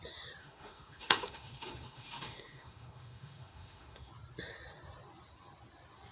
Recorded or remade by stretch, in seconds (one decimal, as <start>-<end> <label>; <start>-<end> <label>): 0.0-0.4 recorded; 0.4-4.1 remade; 4.1-6.1 recorded